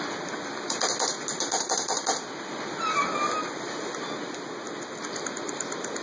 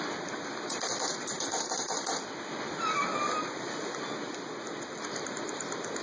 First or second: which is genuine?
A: first